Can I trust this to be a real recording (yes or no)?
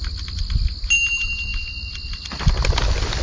yes